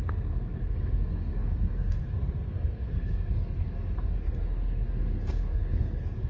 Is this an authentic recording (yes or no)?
no